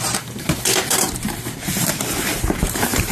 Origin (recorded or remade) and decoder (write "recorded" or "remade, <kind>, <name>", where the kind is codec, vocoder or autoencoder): remade, vocoder, BigVGAN v2